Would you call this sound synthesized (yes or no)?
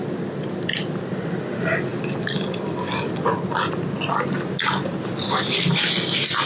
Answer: no